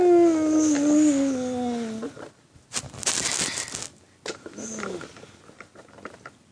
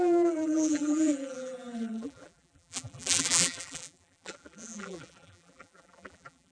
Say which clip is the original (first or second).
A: first